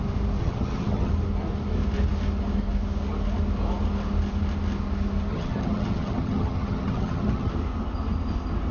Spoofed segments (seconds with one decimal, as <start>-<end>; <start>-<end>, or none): 0.4-1.1; 5.3-7.5